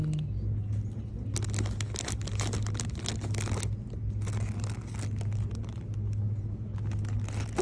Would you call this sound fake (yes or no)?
no